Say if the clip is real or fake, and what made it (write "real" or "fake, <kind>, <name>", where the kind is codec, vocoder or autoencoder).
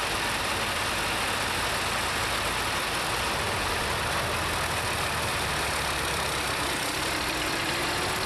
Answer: real